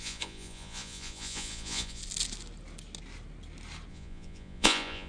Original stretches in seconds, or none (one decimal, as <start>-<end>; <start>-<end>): 2.0-3.9